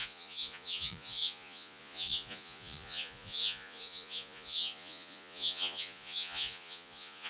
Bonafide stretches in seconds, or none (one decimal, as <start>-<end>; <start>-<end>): none